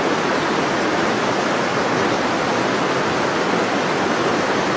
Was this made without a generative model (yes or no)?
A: no